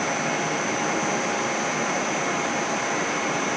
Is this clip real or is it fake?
real